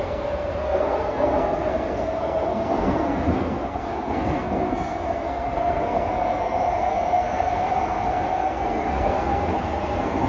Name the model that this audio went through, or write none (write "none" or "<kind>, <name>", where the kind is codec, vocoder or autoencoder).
codec, SNAC